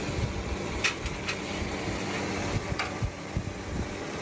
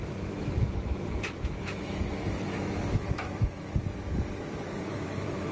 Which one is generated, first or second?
second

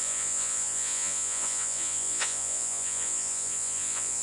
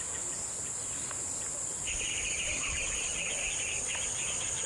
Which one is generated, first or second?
first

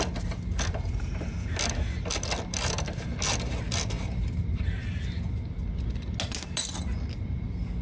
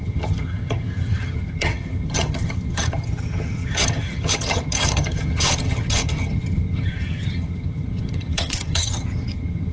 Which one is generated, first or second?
second